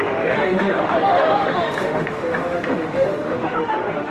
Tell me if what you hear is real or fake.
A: fake